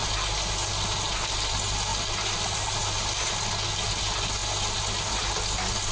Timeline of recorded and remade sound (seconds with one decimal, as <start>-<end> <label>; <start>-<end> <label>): 0.0-5.9 recorded